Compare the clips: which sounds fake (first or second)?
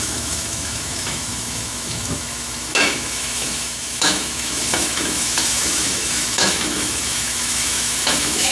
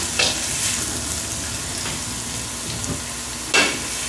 first